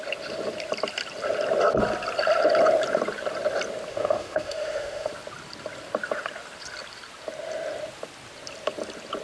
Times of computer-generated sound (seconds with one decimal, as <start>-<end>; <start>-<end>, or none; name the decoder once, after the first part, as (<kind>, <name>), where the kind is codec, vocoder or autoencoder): 3.9-5.1 (autoencoder, DAC-VAE)